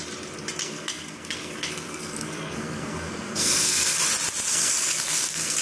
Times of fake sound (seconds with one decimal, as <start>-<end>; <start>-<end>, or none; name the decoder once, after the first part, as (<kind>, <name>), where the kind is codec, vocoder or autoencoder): 0.6-4.0 (codec, SNAC); 4.5-5.6

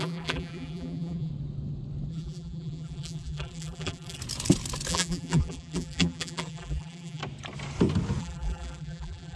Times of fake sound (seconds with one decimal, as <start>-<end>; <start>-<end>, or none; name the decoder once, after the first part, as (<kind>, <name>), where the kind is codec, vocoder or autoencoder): 0.0-1.3 (vocoder, BigVGAN v2); 2.1-4.2; 4.9-7.2; 8.2-9.4

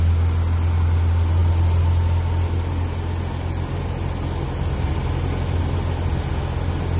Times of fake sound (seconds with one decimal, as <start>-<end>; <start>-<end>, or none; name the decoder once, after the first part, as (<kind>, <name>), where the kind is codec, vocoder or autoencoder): none

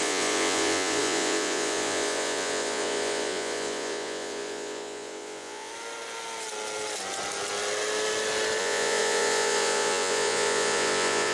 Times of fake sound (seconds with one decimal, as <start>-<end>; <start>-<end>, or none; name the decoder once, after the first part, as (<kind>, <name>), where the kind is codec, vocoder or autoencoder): 0.0-5.7 (vocoder, Vocos); 8.6-11.3

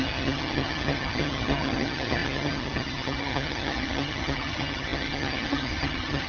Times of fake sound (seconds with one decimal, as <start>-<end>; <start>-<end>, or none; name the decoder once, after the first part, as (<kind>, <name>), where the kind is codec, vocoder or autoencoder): 0.0-6.3 (vocoder, HiFi-GAN)

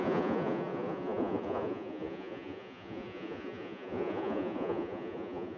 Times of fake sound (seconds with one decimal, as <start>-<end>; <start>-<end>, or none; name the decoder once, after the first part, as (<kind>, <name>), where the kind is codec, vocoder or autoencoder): 0.0-5.6 (vocoder, Vocos)

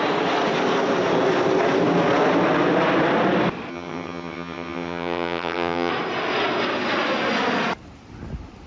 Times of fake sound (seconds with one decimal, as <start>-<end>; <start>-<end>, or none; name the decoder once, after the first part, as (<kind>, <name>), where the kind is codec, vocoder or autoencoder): 3.7-5.9 (vocoder, HiFi-GAN)

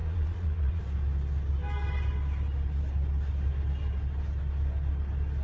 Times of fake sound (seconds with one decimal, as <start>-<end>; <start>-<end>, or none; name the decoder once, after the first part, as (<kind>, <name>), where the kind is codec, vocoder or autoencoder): 0.0-0.8 (vocoder, Vocos)